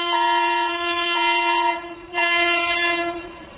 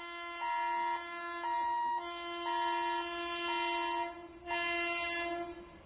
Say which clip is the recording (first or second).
second